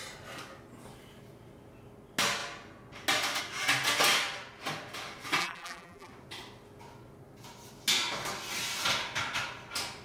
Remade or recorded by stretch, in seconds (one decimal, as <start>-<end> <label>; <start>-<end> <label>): 0.0-5.4 recorded; 5.4-6.1 remade; 6.1-10.0 recorded